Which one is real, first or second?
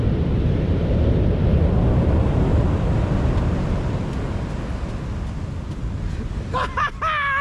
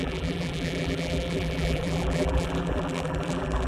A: first